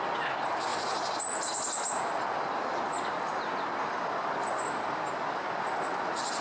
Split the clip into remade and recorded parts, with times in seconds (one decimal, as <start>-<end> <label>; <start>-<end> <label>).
0.0-6.4 recorded